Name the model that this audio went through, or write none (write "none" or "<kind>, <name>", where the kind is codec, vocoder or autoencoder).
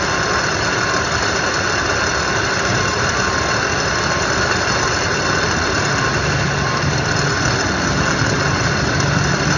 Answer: none